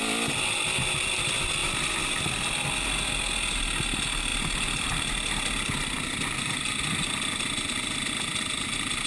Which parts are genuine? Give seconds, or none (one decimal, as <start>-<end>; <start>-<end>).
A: 0.0-9.1